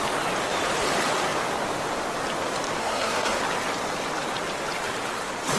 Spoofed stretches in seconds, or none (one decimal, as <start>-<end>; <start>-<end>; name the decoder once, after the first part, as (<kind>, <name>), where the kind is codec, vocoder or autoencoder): 2.8-3.4 (codec, SNAC)